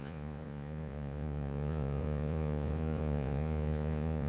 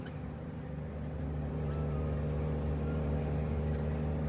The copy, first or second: first